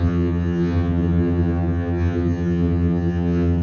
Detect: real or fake fake